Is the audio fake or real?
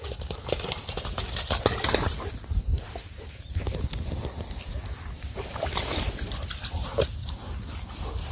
real